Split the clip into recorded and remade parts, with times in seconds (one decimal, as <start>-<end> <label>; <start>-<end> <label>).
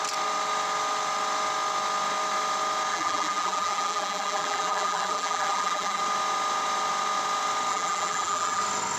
0.0-2.9 recorded; 2.9-6.0 remade; 6.0-7.7 recorded; 7.7-8.6 remade; 8.6-9.0 recorded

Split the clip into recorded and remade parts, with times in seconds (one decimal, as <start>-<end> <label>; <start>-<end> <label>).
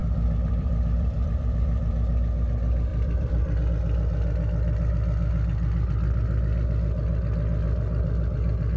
0.0-2.1 remade; 2.1-2.9 recorded; 2.9-3.6 remade; 3.6-8.8 recorded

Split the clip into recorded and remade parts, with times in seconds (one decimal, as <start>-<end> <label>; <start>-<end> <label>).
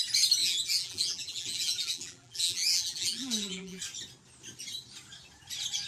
0.0-0.4 recorded; 0.4-3.8 remade; 3.8-5.9 recorded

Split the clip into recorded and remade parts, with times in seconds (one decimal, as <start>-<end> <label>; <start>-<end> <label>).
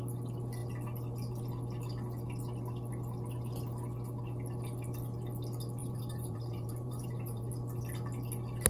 0.0-5.8 recorded; 5.8-7.5 remade; 7.5-8.7 recorded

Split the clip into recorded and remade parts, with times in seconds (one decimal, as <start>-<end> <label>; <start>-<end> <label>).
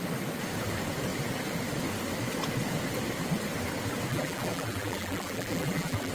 0.0-4.1 recorded; 4.1-6.1 remade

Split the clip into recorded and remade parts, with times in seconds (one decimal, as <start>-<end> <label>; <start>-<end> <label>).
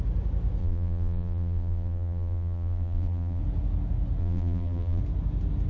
0.0-0.6 recorded; 0.6-3.4 remade; 3.4-4.2 recorded; 4.2-5.0 remade; 5.0-5.7 recorded